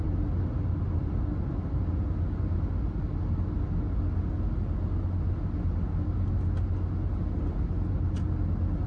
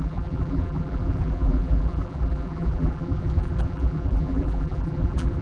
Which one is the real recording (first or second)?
first